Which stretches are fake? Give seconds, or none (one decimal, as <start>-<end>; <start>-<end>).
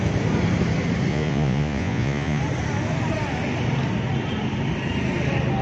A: 1.1-2.4